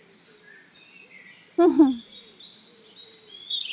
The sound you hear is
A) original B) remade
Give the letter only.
A